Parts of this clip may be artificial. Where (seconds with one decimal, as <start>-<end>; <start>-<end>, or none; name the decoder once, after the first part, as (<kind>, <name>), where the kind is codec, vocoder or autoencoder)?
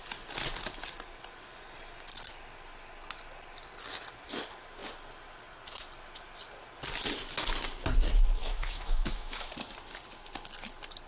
8.4-9.5 (autoencoder, DAC-VAE)